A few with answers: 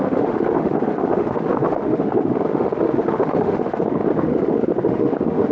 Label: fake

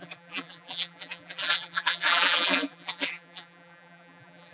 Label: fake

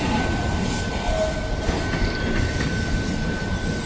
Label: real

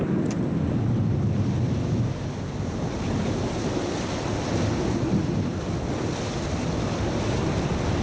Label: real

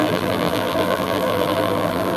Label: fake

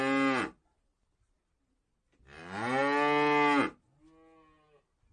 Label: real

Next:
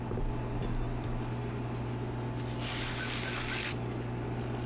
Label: real